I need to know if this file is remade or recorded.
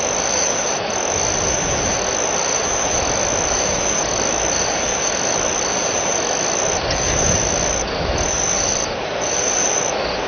recorded